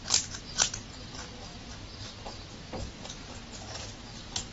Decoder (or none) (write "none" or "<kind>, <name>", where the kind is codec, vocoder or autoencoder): none